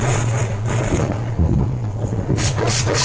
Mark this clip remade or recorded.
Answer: remade